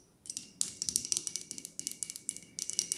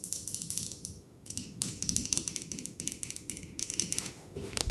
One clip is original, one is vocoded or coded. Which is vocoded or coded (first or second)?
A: second